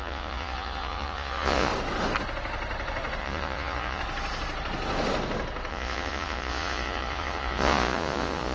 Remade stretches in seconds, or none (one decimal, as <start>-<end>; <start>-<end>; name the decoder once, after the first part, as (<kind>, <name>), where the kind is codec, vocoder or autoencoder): 0.0-1.7 (vocoder, Vocos); 3.2-4.0; 5.7-8.5